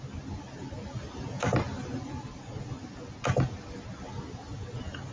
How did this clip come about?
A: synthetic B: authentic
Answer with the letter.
B